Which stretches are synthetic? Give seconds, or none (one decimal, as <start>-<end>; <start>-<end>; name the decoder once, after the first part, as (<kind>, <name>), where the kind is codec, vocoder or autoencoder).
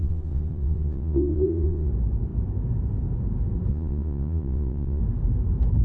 0.0-1.9 (vocoder, Vocos); 3.7-5.0